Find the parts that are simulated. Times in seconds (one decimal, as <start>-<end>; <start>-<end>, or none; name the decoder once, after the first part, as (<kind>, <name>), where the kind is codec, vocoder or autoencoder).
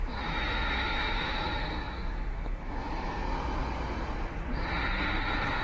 0.0-3.2 (autoencoder, DAC-VAE)